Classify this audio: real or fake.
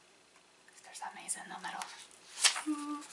real